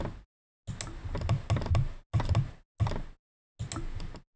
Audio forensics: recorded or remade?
recorded